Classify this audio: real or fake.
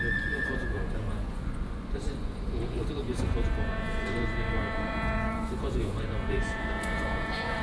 fake